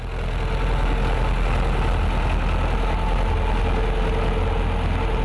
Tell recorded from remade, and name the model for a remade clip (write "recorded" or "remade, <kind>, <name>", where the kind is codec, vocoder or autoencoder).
recorded